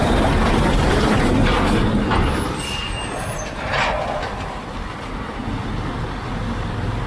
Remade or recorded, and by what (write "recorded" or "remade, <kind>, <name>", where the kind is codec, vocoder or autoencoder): recorded